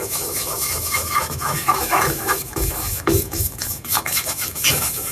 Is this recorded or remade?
remade